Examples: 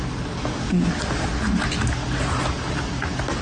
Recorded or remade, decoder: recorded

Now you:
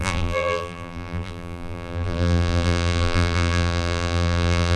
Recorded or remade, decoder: remade, vocoder, BigVGAN v2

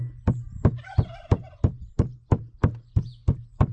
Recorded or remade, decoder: remade, vocoder, BigVGAN v2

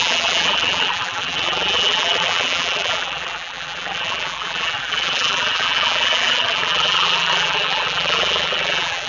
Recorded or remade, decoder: remade, vocoder, BigVGAN v2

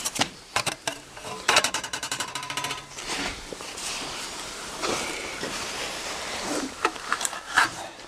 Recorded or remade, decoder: remade, vocoder, BigVGAN v2